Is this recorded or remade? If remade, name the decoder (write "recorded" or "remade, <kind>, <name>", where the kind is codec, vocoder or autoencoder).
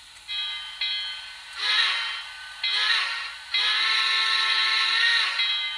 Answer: recorded